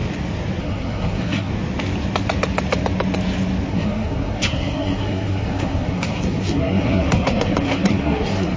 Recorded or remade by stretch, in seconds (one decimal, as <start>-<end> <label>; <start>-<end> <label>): 0.0-0.6 recorded; 0.6-1.5 remade; 1.5-3.7 recorded; 3.7-8.6 remade